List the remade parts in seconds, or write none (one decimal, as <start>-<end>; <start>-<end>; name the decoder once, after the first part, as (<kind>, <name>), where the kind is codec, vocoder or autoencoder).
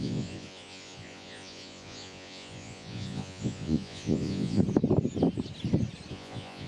0.0-4.6 (vocoder, Vocos); 6.1-6.7